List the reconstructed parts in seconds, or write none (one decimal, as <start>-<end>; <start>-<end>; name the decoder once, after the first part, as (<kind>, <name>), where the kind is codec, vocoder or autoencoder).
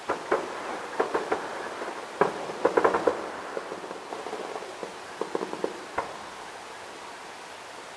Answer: none